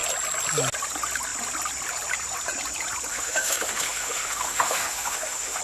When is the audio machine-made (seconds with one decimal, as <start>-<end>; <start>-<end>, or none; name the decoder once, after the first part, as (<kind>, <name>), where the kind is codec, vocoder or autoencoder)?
3.1-5.6 (autoencoder, DAC-VAE)